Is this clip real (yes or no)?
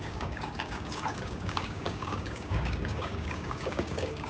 no